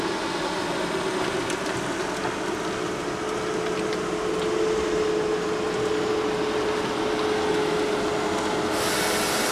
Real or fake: real